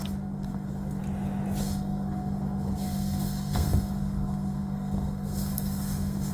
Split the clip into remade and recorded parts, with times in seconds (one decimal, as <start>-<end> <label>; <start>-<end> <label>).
0.0-1.0 remade; 1.0-1.6 recorded; 1.6-6.3 remade